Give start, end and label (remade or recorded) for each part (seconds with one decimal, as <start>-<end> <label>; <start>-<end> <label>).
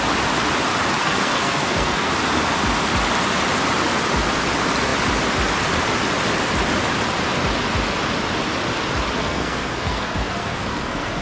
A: 0.0-1.0 recorded; 1.0-2.1 remade; 2.1-9.2 recorded; 9.2-11.2 remade